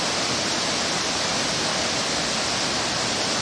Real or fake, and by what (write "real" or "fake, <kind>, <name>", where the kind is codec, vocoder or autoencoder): fake, vocoder, BigVGAN v2